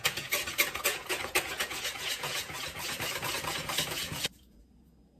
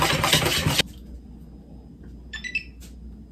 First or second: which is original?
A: second